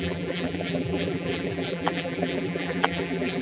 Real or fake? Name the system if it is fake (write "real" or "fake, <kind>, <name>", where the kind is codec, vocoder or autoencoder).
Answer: fake, vocoder, BigVGAN v2